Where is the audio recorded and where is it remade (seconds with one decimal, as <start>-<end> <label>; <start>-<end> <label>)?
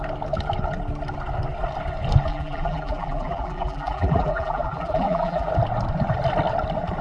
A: 0.0-2.3 recorded; 2.3-5.5 remade; 5.5-7.0 recorded